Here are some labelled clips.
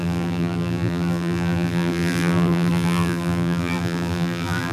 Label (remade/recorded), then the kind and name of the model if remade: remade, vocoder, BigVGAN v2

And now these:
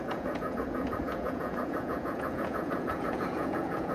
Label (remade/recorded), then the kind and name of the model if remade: remade, vocoder, Vocos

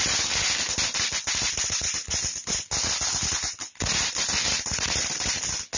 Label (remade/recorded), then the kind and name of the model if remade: recorded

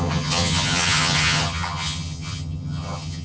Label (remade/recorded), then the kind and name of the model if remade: remade, vocoder, HiFi-GAN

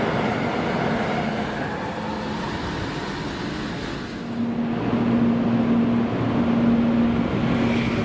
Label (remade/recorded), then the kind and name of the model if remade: recorded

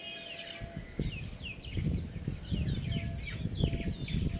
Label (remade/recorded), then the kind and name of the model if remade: recorded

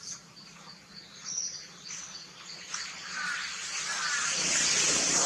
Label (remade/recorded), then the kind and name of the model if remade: recorded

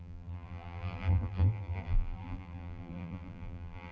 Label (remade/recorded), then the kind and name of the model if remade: remade, vocoder, BigVGAN v2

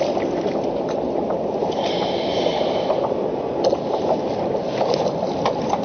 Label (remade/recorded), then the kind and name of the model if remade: recorded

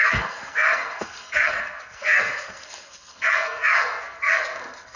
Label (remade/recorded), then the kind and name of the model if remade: remade, codec, SNAC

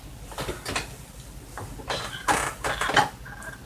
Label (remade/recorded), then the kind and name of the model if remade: recorded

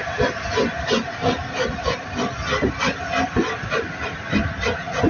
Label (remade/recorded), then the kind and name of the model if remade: recorded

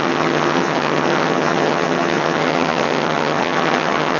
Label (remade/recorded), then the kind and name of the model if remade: remade, vocoder, HiFi-GAN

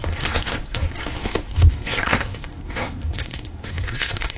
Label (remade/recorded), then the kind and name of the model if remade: remade, codec, SNAC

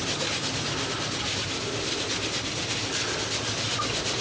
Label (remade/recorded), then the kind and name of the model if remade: recorded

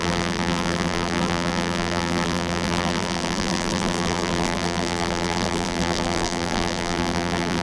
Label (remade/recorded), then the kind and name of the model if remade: remade, vocoder, BigVGAN v2